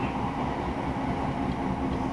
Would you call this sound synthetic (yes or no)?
no